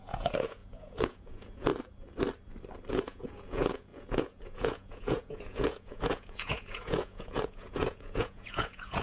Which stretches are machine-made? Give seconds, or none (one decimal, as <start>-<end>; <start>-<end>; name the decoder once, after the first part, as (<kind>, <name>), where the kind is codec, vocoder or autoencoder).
0.0-1.7 (vocoder, Vocos); 2.9-9.0